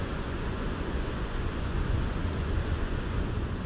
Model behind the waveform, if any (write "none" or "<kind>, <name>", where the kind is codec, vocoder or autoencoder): vocoder, Vocos